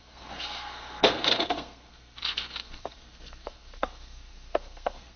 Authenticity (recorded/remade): remade